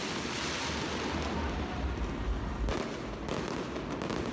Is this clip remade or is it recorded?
recorded